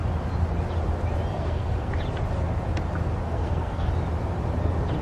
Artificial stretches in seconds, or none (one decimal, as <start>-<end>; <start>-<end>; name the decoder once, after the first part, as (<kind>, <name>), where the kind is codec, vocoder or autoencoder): 1.3-1.9 (codec, SNAC); 3.2-3.9